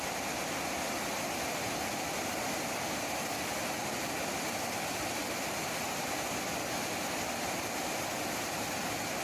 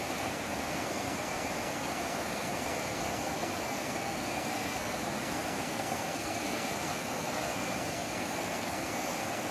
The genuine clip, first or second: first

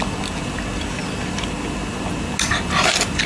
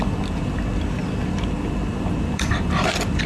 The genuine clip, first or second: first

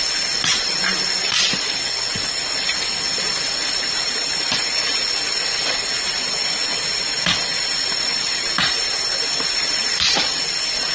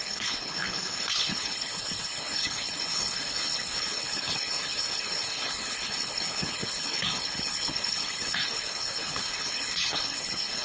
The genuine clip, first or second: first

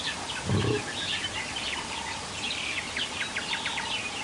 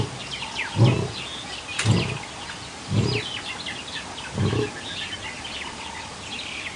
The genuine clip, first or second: second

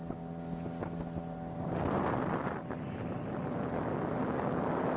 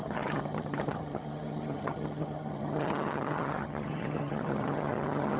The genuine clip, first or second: first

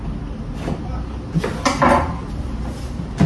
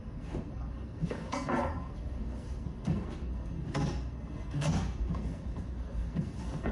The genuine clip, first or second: first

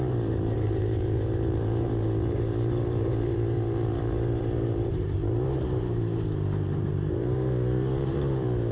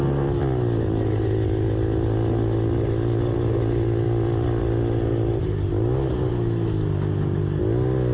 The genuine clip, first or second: second